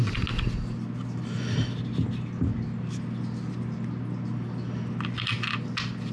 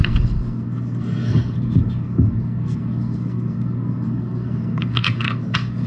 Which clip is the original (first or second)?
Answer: first